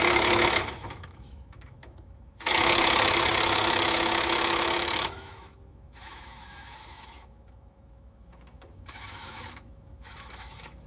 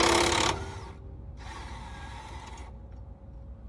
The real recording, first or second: second